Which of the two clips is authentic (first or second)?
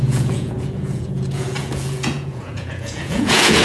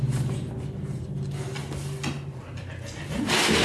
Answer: second